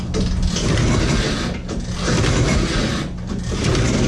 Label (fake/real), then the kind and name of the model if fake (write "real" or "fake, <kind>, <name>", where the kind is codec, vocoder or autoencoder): real